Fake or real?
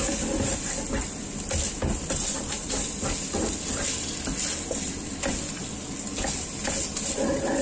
real